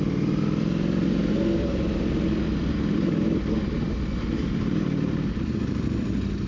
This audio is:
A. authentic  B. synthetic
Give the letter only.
A